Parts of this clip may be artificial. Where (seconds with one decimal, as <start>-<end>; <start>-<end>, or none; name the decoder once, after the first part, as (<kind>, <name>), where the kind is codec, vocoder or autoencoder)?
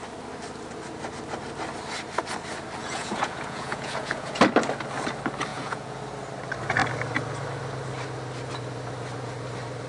2.8-4.4 (vocoder, Vocos); 5.5-6.0